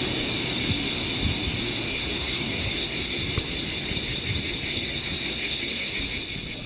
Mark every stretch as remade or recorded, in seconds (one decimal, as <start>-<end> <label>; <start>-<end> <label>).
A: 0.0-1.9 recorded; 1.9-3.2 remade; 3.2-4.7 recorded; 4.7-5.9 remade; 5.9-6.7 recorded